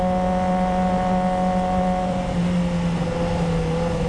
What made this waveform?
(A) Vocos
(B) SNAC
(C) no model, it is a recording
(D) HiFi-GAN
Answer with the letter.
C